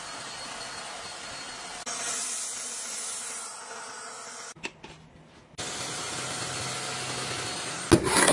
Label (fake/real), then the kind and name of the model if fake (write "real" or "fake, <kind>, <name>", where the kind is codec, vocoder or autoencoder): real